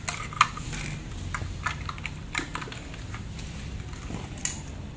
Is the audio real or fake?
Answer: real